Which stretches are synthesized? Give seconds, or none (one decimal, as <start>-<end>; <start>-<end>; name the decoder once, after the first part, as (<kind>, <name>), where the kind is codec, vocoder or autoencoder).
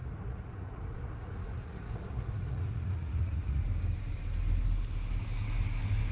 0.0-3.6 (vocoder, Vocos)